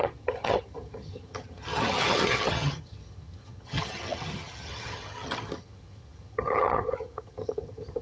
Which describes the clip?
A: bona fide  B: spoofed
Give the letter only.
B